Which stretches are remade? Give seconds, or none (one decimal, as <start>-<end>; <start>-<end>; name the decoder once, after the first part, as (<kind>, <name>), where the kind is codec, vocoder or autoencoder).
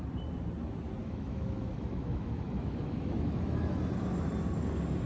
1.0-3.8 (autoencoder, DAC-VAE)